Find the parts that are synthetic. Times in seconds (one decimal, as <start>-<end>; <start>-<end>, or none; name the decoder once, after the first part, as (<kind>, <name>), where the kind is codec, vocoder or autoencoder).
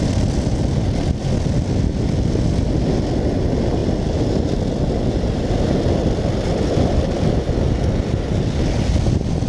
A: none